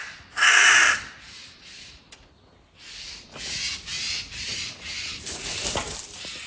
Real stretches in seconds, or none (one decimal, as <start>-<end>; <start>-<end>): 0.0-0.6; 2.0-4.5; 5.4-6.5